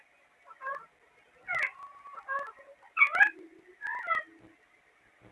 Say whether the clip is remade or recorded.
recorded